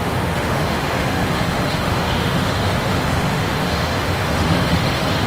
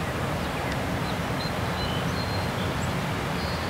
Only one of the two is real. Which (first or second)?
second